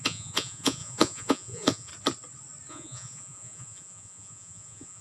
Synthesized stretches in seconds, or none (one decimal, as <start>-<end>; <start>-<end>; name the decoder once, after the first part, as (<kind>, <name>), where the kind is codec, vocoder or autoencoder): 0.0-1.9 (vocoder, Vocos); 2.7-5.0